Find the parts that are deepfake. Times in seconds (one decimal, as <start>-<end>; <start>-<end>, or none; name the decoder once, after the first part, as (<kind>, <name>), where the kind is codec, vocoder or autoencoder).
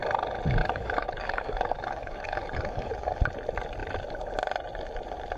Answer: 0.6-3.2 (codec, DAC)